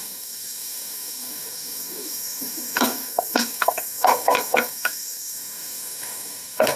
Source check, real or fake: fake